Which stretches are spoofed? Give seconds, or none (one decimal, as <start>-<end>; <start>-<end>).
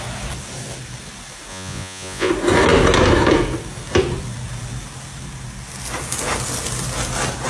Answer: 1.5-2.3